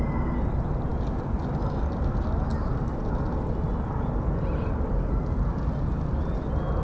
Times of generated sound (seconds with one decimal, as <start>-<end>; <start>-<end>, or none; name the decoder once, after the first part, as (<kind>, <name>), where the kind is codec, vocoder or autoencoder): none